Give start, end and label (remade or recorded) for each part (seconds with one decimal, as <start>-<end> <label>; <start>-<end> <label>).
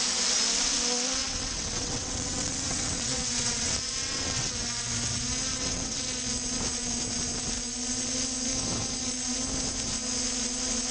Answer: 0.0-1.2 recorded; 1.2-4.5 remade; 4.5-5.5 recorded; 5.5-6.0 remade; 6.0-10.9 recorded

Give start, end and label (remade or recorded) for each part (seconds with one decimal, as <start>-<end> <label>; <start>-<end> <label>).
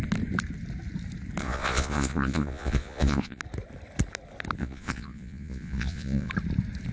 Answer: 0.0-1.4 recorded; 1.4-3.4 remade; 3.4-4.6 recorded; 4.6-6.3 remade; 6.3-6.9 recorded